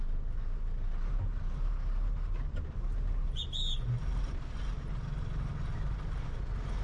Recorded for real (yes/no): yes